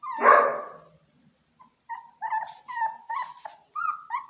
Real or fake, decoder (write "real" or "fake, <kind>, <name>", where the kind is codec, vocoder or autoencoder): real